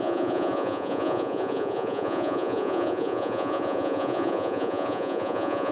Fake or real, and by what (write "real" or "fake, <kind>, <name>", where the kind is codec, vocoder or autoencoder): fake, vocoder, Vocos